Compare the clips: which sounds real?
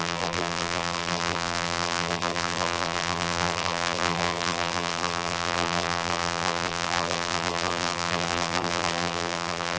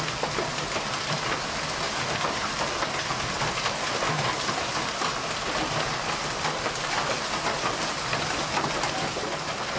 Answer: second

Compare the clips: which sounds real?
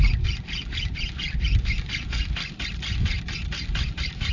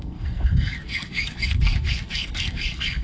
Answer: first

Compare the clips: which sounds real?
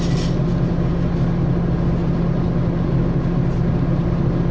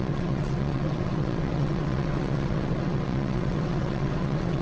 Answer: first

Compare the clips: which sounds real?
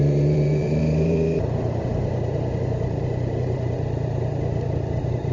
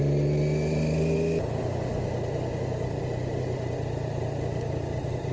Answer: second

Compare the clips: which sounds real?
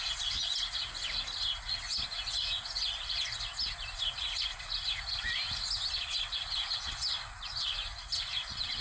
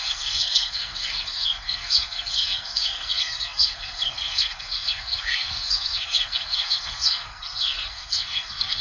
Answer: first